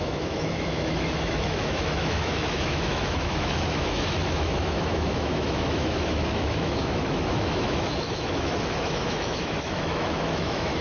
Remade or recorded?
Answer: remade